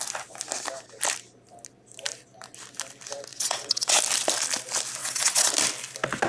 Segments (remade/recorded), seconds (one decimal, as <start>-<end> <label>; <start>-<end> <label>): 0.0-3.3 recorded; 3.3-4.0 remade; 4.0-5.0 recorded; 5.0-5.5 remade; 5.5-6.3 recorded